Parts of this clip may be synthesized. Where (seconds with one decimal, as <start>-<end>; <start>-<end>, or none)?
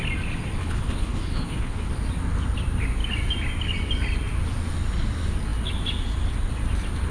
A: 0.6-1.9